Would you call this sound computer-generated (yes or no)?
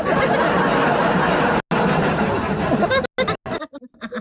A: no